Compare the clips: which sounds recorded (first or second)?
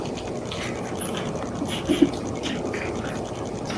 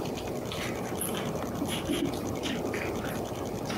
first